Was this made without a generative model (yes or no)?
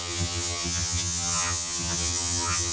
no